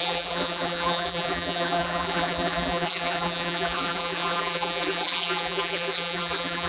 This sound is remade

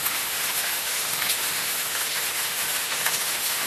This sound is remade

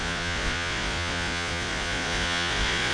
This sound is remade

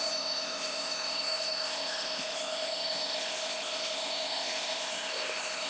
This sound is remade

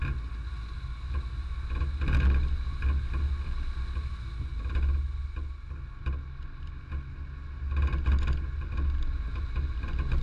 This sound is recorded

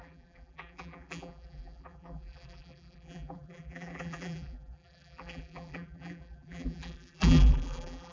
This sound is remade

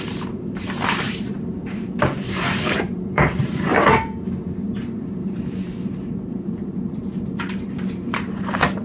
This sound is remade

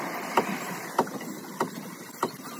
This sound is recorded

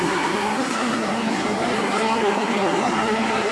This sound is remade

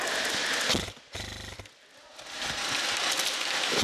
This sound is recorded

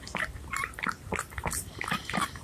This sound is recorded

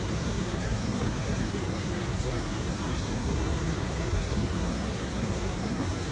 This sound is remade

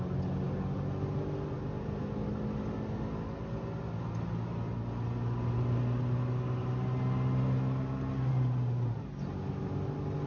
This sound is recorded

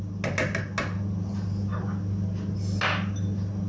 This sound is recorded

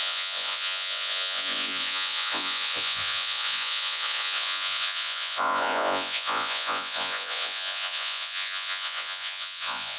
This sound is remade